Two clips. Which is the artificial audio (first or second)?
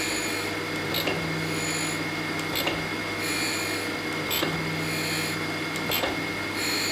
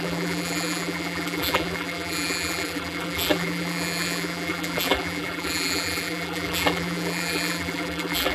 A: second